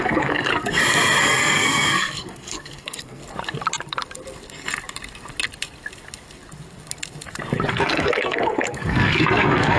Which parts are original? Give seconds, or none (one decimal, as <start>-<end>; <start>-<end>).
0.5-1.2; 3.2-7.7